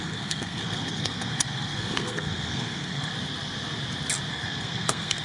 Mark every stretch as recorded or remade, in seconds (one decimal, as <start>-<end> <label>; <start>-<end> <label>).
0.0-3.1 remade; 3.1-4.3 recorded; 4.3-5.2 remade